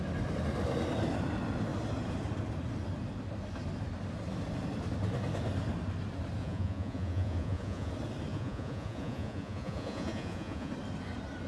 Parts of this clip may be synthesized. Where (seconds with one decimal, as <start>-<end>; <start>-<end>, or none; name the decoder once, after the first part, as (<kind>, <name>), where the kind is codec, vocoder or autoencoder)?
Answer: 6.4-7.9 (vocoder, Vocos); 8.3-10.7